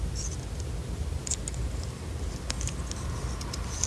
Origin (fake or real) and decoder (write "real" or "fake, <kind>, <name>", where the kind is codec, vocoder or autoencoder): real